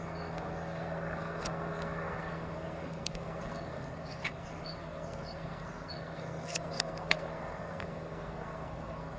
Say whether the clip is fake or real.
fake